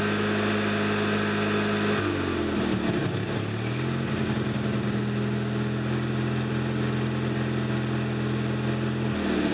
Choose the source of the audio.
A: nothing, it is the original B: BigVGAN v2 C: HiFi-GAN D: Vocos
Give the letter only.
A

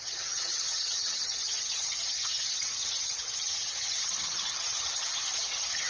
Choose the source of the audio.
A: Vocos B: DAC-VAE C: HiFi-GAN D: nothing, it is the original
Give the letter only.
C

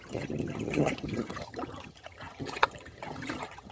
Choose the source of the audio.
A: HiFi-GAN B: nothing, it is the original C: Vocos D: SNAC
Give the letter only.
A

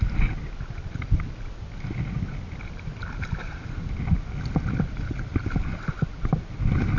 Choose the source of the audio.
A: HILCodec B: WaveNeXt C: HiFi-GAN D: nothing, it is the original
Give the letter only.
D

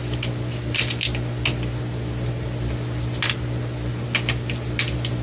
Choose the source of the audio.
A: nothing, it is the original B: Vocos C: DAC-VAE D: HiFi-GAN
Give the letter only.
A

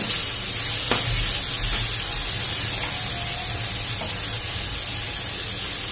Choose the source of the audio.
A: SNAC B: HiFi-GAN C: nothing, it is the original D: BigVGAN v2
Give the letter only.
C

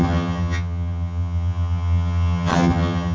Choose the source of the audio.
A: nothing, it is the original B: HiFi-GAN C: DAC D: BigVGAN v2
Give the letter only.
B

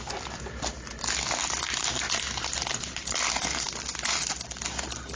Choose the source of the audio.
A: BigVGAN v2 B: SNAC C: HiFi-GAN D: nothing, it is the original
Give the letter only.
D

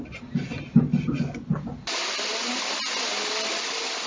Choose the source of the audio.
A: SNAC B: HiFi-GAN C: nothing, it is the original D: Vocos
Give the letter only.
C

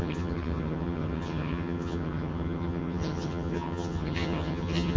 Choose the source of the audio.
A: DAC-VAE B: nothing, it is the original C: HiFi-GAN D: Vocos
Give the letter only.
C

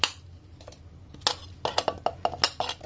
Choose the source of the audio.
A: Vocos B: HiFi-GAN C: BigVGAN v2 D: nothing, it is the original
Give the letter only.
D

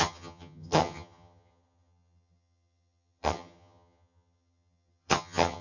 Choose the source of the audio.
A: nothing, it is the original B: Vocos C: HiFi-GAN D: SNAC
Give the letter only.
C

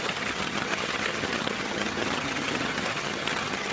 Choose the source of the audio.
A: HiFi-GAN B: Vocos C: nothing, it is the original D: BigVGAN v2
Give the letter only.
A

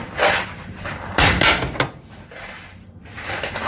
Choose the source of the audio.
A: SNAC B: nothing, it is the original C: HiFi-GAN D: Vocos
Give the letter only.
B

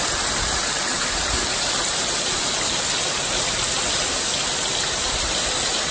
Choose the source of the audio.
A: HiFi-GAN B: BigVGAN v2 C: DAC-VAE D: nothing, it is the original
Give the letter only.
D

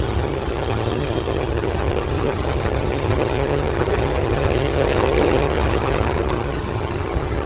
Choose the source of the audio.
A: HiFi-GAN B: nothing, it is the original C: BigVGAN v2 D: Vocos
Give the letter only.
A